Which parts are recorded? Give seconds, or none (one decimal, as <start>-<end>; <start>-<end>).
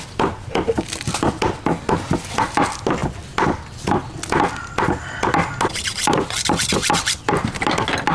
0.0-8.1